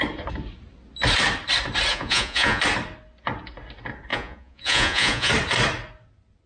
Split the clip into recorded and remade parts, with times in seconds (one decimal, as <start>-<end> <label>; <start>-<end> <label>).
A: 0.0-1.9 recorded; 1.9-2.6 remade; 2.6-4.1 recorded; 4.1-5.3 remade; 5.3-6.5 recorded